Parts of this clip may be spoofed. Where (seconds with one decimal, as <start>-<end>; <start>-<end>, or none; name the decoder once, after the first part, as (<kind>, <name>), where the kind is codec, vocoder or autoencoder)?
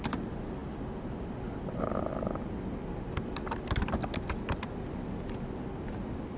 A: none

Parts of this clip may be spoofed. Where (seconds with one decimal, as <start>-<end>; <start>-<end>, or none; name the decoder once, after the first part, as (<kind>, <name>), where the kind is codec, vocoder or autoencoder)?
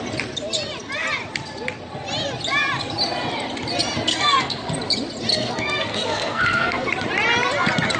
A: 4.1-4.7 (codec, SNAC); 5.3-6.9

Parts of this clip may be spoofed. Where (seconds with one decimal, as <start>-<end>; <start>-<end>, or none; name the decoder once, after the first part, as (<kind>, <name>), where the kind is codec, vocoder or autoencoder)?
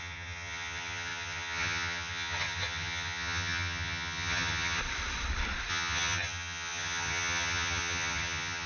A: 0.0-4.8 (vocoder, HiFi-GAN); 5.7-8.7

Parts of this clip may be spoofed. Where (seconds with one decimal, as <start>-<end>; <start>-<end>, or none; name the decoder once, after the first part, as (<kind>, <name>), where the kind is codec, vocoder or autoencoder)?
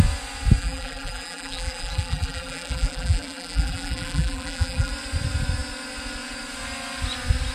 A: 0.6-4.9 (vocoder, BigVGAN v2)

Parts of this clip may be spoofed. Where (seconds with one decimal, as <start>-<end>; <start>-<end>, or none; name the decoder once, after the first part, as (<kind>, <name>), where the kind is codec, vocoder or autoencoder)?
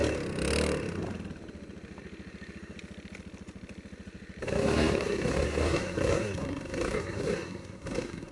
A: 4.4-8.3 (codec, SNAC)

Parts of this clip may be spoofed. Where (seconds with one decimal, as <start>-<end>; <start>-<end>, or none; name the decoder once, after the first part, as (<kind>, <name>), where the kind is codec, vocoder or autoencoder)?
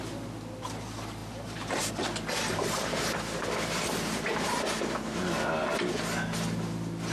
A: 1.2-1.9 (vocoder, BigVGAN v2)